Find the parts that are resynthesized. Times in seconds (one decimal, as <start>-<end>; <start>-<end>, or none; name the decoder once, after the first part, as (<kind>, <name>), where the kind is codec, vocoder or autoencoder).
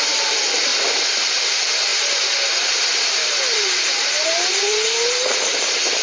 0.0-0.7 (vocoder, BigVGAN v2); 1.4-1.9; 3.1-6.0